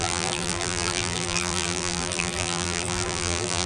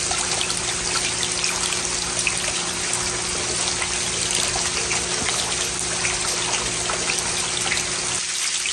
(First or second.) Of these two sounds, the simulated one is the first